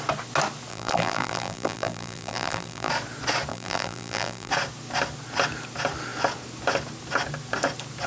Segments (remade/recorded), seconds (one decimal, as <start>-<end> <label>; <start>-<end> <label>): 0.0-0.7 recorded; 0.7-2.9 remade; 2.9-3.5 recorded; 3.5-4.5 remade; 4.5-8.1 recorded